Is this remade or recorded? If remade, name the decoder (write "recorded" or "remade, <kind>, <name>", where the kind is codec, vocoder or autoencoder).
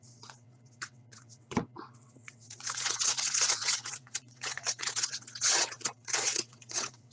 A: remade, vocoder, WaveNeXt